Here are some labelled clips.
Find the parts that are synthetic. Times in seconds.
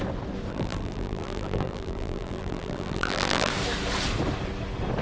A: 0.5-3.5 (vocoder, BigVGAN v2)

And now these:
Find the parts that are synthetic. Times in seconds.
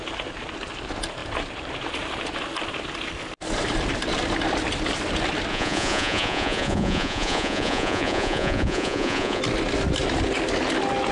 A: 5.5-9.4 (vocoder, Vocos)